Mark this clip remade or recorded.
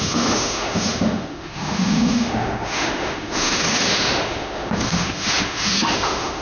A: remade